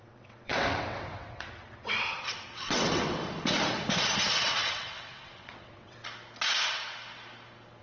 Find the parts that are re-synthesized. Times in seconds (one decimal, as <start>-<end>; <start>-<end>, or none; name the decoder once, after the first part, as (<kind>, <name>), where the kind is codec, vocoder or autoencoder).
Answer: 0.0-3.2 (vocoder, WaveNeXt); 4.4-6.0